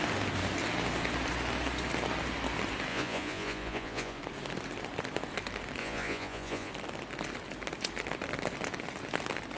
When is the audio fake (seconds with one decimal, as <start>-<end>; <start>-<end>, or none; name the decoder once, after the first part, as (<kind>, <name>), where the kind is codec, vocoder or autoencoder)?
2.9-4.2 (vocoder, Vocos); 5.8-6.7